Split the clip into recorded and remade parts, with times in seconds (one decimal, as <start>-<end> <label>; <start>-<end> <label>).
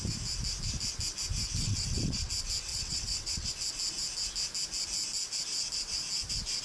0.0-1.6 recorded; 1.6-2.3 remade; 2.3-2.7 recorded; 2.7-3.5 remade; 3.5-6.6 recorded